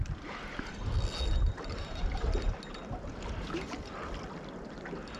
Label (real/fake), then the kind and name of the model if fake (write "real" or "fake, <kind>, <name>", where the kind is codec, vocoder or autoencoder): real